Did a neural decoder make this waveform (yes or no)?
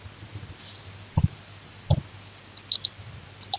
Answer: no